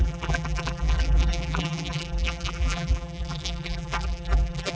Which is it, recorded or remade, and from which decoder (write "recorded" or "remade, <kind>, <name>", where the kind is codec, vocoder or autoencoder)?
remade, vocoder, BigVGAN v2